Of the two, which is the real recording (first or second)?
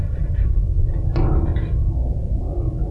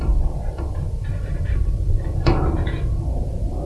first